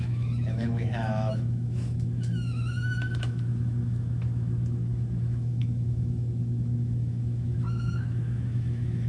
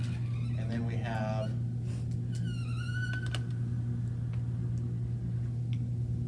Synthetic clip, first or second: first